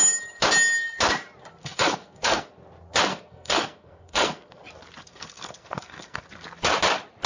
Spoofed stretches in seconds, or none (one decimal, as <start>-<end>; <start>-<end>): 1.6-2.5; 3.1-4.6; 5.1-6.2